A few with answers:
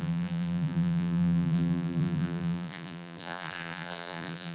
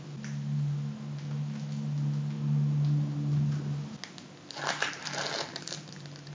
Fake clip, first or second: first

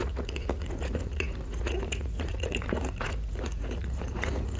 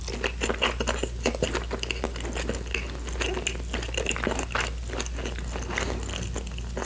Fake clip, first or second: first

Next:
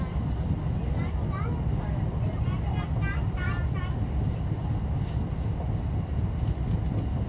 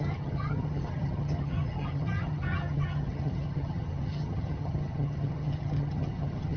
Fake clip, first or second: second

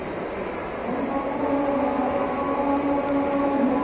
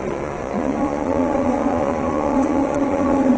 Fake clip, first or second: second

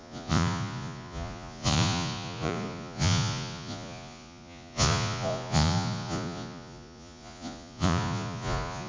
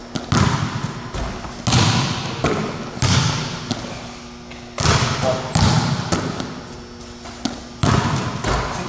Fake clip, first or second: first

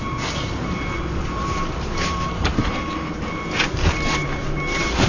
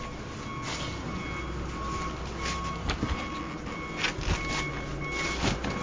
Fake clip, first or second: first